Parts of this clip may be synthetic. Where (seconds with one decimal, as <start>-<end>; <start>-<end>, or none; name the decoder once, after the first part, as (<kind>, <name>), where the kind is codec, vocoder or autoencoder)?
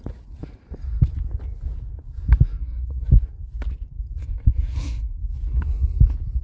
2.6-3.1 (codec, SNAC); 4.2-5.2